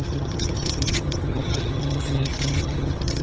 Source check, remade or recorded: remade